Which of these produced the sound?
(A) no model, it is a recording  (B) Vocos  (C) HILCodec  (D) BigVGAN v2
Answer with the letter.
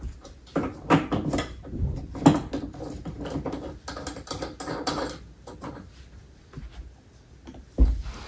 A